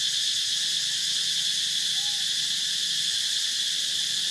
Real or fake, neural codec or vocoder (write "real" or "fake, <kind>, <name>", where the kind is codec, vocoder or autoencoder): real